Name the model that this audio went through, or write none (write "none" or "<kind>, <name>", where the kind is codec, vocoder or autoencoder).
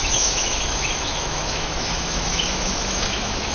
autoencoder, DAC-VAE